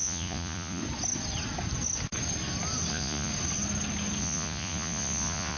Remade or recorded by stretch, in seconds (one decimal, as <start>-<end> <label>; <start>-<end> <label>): 0.0-0.8 remade; 0.8-2.9 recorded; 2.9-3.3 remade; 3.3-4.2 recorded; 4.2-5.6 remade

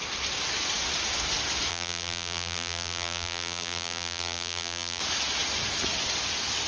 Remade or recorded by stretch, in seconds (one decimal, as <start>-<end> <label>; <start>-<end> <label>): 0.0-1.7 recorded; 1.7-5.0 remade; 5.0-6.7 recorded

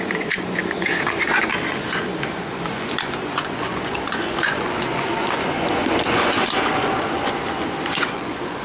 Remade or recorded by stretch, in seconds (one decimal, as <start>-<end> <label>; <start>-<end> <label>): 0.0-8.6 remade

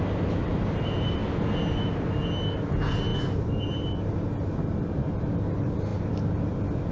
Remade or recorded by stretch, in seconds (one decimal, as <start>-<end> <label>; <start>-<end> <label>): 0.0-6.9 recorded